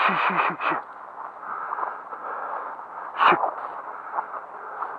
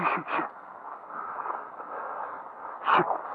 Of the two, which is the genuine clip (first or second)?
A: first